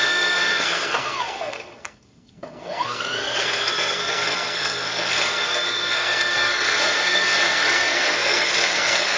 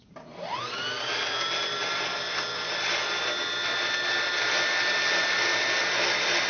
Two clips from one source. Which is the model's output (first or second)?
first